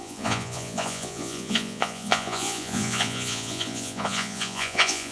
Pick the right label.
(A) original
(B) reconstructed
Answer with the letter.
B